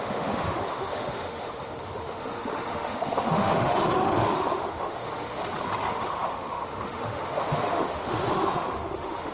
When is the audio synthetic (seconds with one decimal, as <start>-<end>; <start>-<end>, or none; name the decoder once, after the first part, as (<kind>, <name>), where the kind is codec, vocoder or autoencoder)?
0.0-5.4 (autoencoder, DAC-VAE); 5.9-9.3